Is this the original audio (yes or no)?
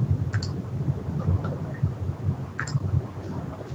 yes